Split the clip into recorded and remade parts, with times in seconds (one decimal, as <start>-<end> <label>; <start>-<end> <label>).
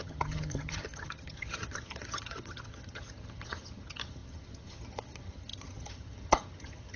0.0-7.0 remade